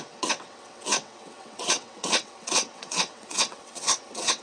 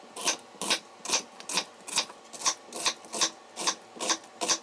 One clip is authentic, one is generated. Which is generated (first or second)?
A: first